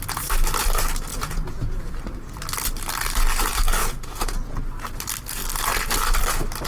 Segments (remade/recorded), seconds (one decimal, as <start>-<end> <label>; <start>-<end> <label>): 0.0-1.1 recorded; 1.1-1.9 remade; 1.9-3.8 recorded; 3.8-4.5 remade; 4.5-6.7 recorded